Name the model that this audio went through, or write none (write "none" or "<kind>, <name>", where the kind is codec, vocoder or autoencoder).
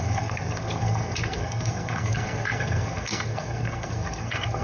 codec, SNAC